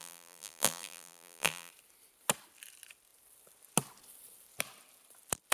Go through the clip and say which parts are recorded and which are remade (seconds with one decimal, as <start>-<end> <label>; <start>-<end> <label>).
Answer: 0.0-1.7 remade; 1.7-5.5 recorded

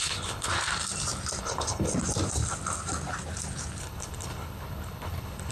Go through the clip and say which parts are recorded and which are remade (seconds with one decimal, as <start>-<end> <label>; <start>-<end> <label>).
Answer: 0.0-0.5 remade; 0.5-1.4 recorded; 1.4-1.9 remade; 1.9-3.8 recorded; 3.8-5.5 remade